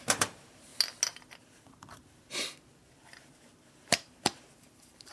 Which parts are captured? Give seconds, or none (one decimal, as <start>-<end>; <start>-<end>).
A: 0.7-1.4; 2.0-2.7